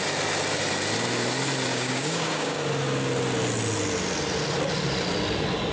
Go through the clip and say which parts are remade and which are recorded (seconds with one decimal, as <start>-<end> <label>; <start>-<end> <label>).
0.0-1.7 recorded; 1.7-2.6 remade; 2.6-5.7 recorded